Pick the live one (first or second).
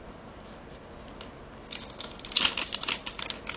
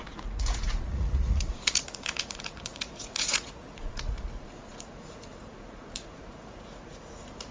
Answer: first